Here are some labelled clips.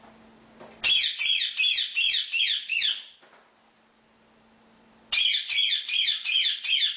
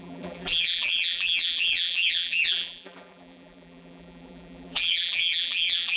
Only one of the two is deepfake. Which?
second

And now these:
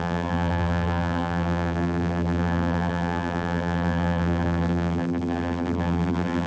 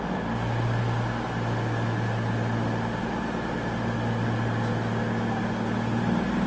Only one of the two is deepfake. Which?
first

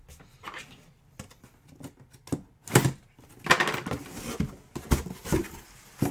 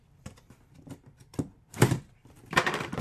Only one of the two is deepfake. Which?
second